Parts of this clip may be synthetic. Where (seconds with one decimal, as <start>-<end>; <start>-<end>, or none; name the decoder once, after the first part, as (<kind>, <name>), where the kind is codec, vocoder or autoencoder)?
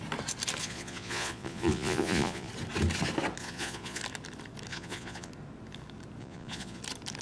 0.6-2.5 (vocoder, Vocos); 3.4-4.0; 4.7-5.3; 6.2-6.8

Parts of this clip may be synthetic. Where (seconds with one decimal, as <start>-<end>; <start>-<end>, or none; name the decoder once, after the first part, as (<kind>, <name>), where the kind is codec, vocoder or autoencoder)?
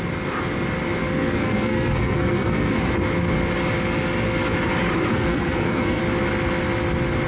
1.0-2.9 (codec, SNAC); 5.1-6.0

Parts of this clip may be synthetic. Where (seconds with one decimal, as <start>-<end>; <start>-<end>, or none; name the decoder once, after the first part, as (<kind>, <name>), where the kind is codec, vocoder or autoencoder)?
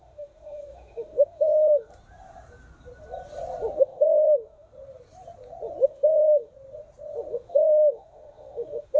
0.0-1.9 (autoencoder, DAC-VAE); 3.8-4.7; 5.8-6.5; 7.3-9.0